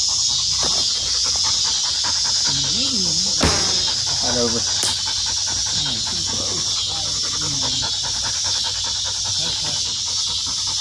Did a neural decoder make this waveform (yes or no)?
no